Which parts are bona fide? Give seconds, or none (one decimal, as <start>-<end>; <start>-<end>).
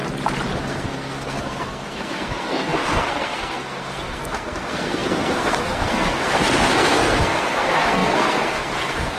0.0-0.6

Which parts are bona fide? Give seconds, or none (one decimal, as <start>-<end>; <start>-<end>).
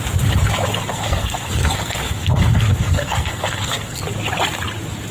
0.0-0.9; 4.0-5.1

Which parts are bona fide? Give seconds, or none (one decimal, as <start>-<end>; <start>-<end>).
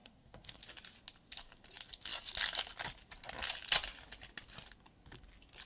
0.6-5.7